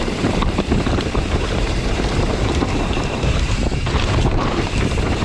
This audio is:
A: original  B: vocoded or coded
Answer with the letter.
B